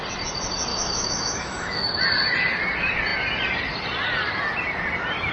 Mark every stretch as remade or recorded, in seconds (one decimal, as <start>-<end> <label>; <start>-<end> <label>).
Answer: 0.0-0.7 recorded; 0.7-2.0 remade; 2.0-5.3 recorded